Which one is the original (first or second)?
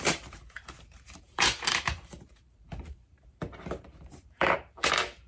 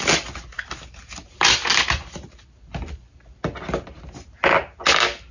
second